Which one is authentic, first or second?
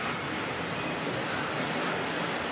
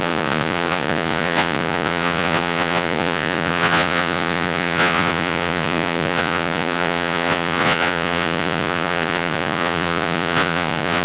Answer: first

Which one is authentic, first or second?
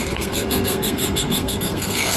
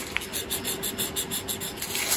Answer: second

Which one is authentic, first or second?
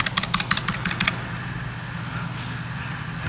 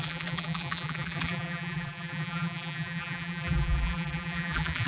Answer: first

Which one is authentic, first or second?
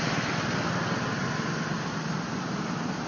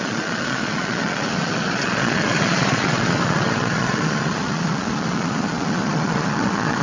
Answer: first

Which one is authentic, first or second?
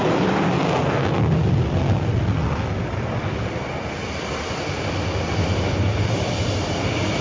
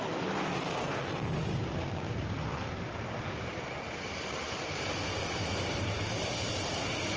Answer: first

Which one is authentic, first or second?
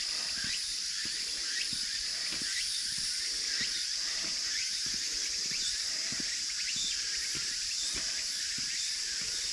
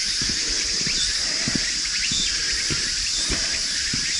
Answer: second